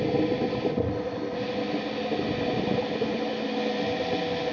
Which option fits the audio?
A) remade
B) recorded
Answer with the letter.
B